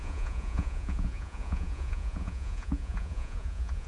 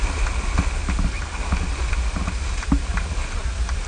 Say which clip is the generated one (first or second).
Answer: first